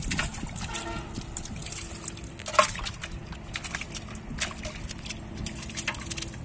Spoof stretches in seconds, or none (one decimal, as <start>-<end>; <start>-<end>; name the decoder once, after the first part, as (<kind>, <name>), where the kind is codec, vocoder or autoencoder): none